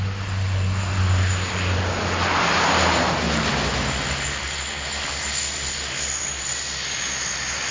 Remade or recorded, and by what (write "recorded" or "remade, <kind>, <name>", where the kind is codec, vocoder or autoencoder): recorded